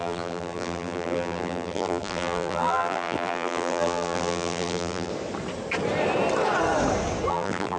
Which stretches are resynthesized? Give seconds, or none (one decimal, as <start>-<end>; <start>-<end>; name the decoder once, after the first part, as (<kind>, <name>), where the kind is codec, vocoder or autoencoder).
0.0-5.1 (vocoder, BigVGAN v2); 7.3-7.8

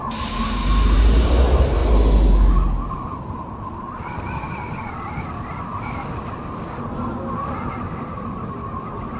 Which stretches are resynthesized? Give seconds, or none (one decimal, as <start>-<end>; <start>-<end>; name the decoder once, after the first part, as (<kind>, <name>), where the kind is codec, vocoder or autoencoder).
0.6-1.4 (vocoder, BigVGAN v2)